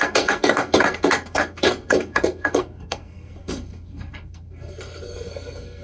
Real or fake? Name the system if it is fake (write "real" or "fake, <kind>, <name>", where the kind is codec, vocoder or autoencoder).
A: fake, codec, SNAC